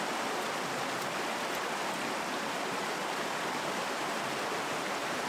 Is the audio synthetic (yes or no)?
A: yes